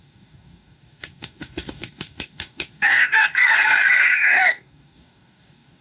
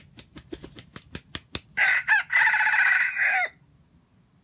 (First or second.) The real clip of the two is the second